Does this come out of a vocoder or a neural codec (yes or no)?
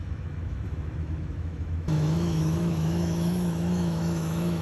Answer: yes